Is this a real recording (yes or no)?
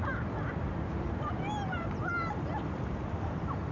no